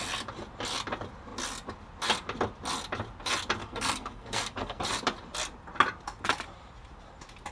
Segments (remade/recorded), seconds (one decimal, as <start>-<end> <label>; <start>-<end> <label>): 0.0-3.6 recorded; 3.6-4.8 remade; 4.8-7.5 recorded